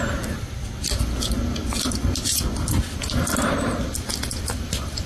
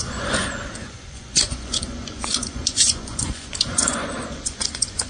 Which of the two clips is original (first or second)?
first